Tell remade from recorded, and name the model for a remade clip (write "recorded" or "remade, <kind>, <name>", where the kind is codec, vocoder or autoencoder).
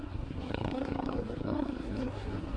remade, codec, SNAC